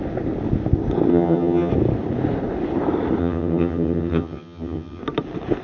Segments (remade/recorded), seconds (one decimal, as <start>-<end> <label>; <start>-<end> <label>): 0.0-1.1 recorded; 1.1-1.7 remade; 1.7-3.2 recorded; 3.2-5.0 remade; 5.0-5.6 recorded